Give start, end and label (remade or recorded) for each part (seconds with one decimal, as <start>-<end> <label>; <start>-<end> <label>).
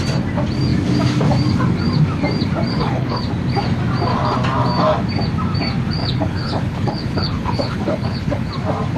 0.0-2.7 recorded; 2.7-3.2 remade; 3.2-6.0 recorded; 6.0-8.5 remade; 8.5-9.0 recorded